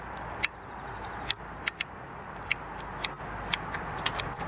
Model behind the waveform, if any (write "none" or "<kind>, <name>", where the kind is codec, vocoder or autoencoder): none